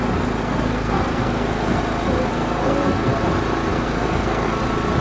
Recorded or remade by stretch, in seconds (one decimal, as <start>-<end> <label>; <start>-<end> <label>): 0.0-0.4 recorded; 0.4-1.8 remade; 1.8-2.3 recorded; 2.3-3.1 remade; 3.1-3.7 recorded; 3.7-4.6 remade; 4.6-5.0 recorded